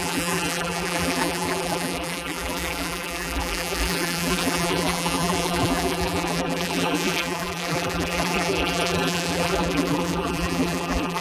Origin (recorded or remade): remade